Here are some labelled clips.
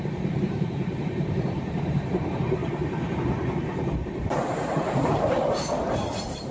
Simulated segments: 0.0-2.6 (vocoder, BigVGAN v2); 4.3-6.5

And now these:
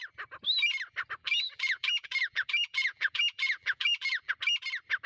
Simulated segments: 1.2-4.3 (vocoder, BigVGAN v2)